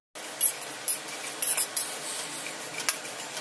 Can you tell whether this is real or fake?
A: real